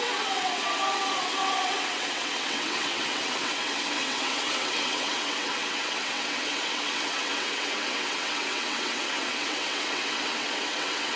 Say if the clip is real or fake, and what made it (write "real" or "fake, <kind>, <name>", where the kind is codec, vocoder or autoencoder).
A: fake, vocoder, WaveNeXt